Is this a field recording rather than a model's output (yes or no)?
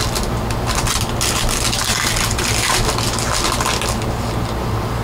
yes